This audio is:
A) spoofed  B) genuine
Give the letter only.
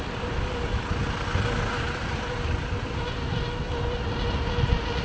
B